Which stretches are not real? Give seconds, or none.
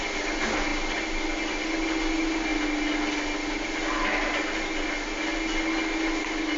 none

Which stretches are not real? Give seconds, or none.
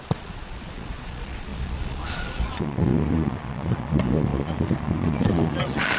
0.0-6.0 (vocoder, Vocos)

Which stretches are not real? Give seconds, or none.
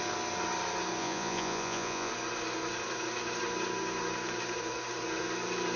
1.0-2.1 (vocoder, Vocos)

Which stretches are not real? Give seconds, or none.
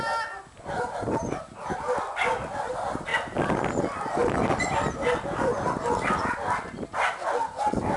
4.2-4.9 (vocoder, BigVGAN v2)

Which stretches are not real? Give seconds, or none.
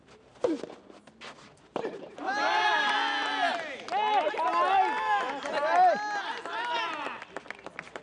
none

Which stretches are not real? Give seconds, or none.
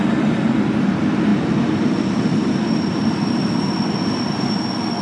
none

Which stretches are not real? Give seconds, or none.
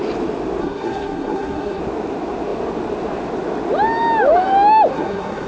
0.6-1.8 (codec, SNAC); 4.9-5.5